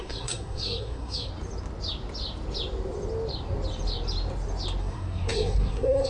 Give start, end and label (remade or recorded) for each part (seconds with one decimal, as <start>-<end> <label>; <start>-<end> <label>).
0.0-1.3 remade; 1.3-4.8 recorded; 4.8-6.1 remade